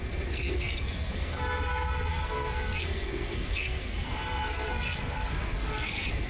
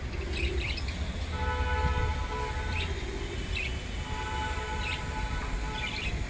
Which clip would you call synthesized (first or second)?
first